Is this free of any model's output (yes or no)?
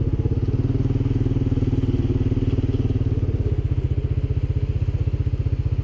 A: yes